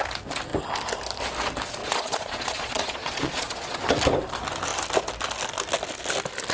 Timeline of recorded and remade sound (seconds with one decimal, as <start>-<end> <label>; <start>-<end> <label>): 0.0-1.8 recorded; 1.8-3.8 remade; 3.8-6.5 recorded